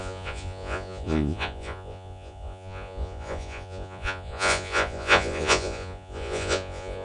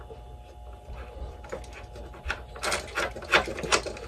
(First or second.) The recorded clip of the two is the second